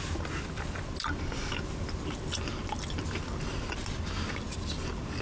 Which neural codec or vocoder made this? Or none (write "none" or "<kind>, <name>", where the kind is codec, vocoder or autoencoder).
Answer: none